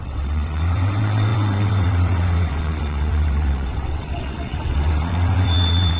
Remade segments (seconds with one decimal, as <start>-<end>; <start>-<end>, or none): 0.0-6.0